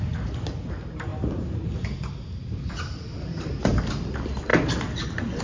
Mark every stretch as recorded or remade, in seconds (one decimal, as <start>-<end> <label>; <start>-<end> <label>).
0.0-5.4 recorded